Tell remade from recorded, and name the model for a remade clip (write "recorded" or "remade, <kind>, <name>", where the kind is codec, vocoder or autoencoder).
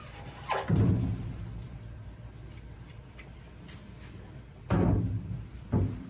remade, vocoder, BigVGAN v2